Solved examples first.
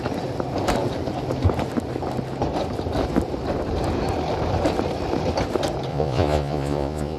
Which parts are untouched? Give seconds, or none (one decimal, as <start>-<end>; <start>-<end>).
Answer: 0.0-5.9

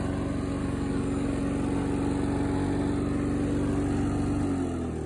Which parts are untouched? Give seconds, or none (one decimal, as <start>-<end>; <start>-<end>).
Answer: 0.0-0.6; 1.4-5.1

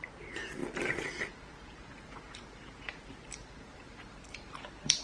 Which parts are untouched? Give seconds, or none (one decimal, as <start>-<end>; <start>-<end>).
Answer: none

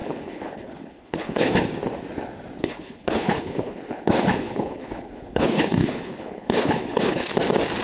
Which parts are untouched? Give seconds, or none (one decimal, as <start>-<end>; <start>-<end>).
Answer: 1.5-2.6; 7.3-7.8